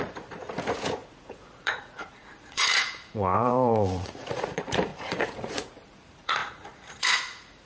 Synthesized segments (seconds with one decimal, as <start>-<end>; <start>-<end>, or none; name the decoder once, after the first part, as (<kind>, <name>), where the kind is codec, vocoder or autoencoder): 0.0-7.7 (vocoder, Vocos)